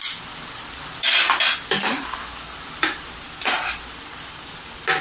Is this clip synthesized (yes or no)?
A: yes